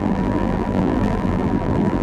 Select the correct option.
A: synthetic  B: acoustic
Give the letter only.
A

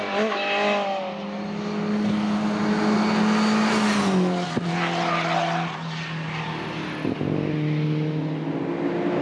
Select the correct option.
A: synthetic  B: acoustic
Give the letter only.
B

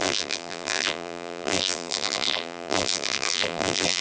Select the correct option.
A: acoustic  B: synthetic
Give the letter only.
B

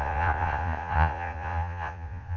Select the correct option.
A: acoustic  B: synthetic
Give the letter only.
B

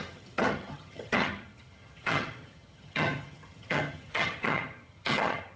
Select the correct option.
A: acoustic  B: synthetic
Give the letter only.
B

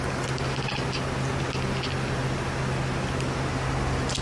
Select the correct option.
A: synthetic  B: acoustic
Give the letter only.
B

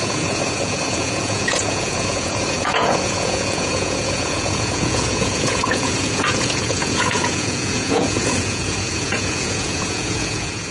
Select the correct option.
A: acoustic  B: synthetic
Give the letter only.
B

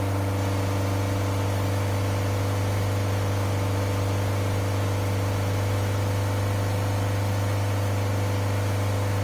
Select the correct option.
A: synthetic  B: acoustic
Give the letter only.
B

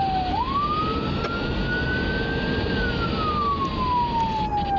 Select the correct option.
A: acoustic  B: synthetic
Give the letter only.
A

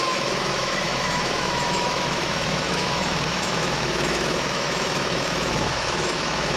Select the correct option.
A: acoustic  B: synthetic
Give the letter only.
B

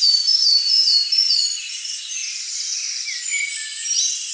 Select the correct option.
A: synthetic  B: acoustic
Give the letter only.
B